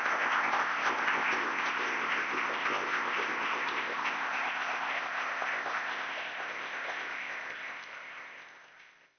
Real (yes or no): no